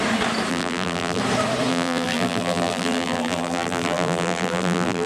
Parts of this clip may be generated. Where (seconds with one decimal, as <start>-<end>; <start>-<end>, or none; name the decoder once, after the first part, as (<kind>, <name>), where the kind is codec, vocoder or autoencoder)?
0.5-1.2 (vocoder, BigVGAN v2); 1.7-5.1